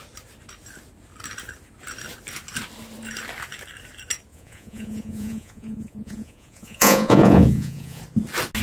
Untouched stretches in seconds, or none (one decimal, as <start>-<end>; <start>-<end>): 0.0-4.3; 8.0-8.6